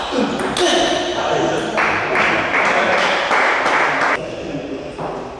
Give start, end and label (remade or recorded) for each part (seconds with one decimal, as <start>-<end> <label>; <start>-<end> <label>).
0.0-5.4 recorded